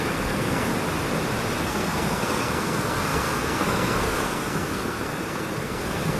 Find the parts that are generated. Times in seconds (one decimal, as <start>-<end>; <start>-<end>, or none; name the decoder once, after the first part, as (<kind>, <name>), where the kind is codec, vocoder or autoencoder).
0.0-0.7 (codec, SNAC); 1.6-6.2